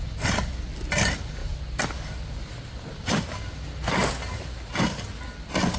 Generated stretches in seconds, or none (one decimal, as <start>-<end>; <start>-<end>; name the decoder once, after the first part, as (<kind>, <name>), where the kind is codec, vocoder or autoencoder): none